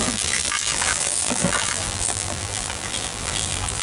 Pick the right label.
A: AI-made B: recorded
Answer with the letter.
A